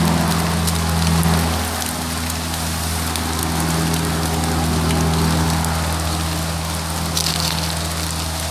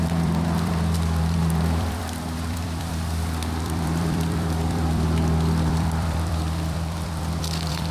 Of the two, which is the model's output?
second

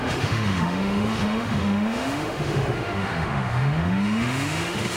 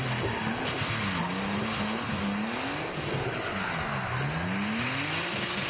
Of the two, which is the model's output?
first